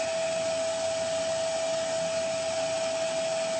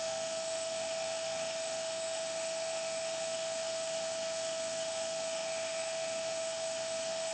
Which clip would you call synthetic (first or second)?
second